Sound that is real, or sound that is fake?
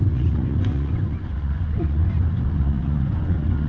fake